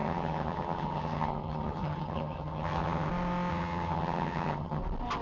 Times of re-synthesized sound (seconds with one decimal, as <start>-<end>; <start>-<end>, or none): 0.0-3.1; 3.5-4.8